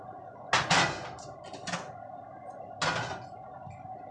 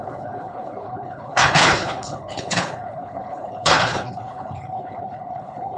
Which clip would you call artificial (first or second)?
second